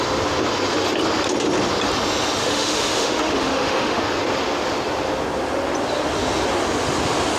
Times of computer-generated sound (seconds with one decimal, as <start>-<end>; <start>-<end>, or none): 2.4-4.0